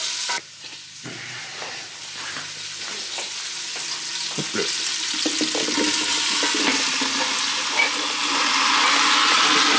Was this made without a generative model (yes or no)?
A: yes